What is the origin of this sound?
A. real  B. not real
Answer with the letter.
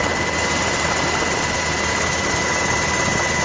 A